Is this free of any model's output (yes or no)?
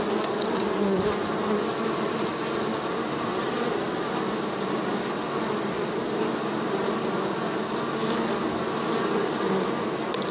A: yes